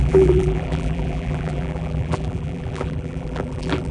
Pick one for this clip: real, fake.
fake